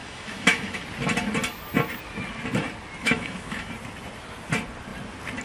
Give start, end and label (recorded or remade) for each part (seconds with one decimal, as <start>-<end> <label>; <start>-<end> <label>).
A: 0.0-0.8 remade; 0.8-3.0 recorded; 3.0-3.7 remade; 3.7-5.4 recorded